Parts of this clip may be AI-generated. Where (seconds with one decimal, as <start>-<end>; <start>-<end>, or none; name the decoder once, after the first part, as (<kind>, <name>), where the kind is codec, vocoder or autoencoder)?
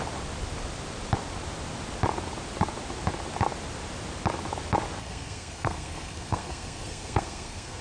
5.0-7.8 (codec, SNAC)